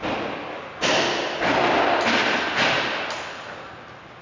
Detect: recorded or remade recorded